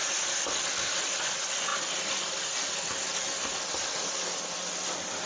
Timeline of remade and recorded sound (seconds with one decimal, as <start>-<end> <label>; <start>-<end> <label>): 0.0-5.3 recorded